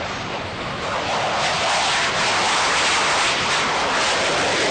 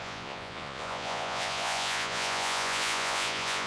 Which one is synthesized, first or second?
second